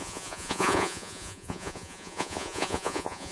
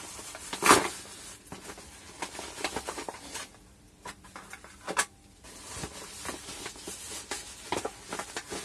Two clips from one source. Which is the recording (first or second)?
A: second